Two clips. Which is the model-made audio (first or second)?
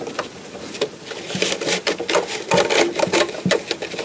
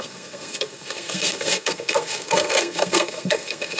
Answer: second